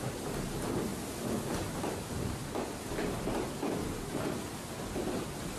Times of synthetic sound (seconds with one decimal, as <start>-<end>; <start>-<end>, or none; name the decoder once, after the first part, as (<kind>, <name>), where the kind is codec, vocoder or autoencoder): none